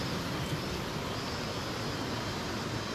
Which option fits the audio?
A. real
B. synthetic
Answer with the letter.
A